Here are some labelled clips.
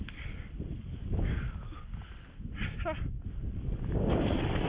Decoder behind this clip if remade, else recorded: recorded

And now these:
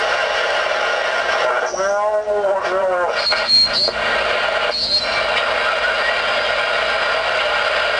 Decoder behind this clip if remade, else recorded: recorded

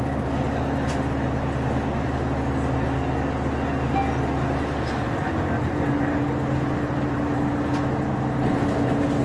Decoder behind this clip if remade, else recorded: recorded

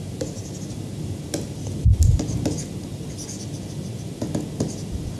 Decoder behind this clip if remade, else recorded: recorded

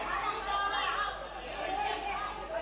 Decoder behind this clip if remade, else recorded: recorded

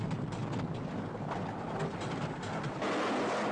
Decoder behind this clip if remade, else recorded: recorded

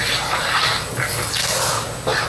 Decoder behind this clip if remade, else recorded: recorded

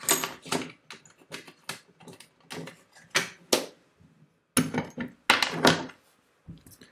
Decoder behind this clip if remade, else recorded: recorded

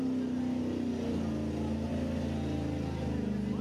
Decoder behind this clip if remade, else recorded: recorded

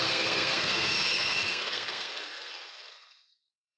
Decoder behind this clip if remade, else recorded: remade, codec, SNAC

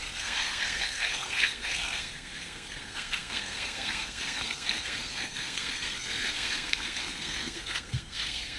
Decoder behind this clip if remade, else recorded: remade, codec, SNAC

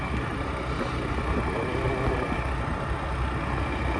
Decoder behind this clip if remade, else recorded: recorded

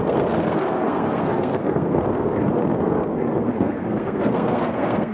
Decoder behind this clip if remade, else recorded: remade, codec, SNAC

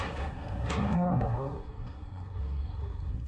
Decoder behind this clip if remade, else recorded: remade, codec, SNAC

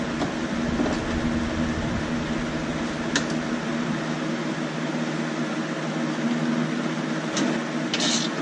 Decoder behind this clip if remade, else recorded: recorded